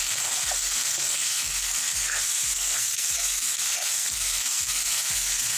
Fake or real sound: fake